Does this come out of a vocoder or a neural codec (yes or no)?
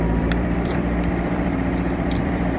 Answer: yes